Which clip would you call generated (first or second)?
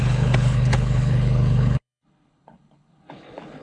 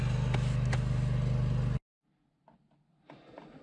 first